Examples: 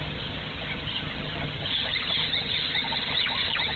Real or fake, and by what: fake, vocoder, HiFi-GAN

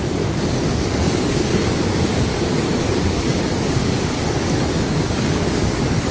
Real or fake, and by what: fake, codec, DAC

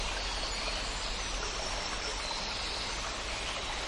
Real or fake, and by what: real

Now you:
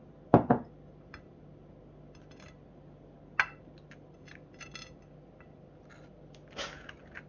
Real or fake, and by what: real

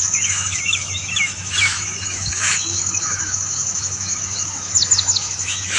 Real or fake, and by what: fake, autoencoder, DAC-VAE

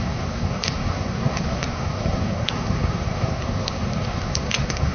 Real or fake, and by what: fake, codec, SNAC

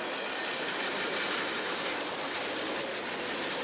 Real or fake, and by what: real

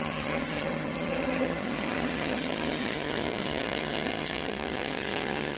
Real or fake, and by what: fake, vocoder, HiFi-GAN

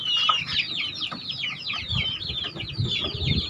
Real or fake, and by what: real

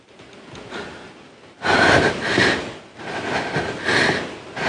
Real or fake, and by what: real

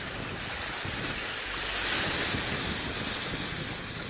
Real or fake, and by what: real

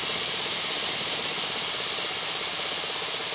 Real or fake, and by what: real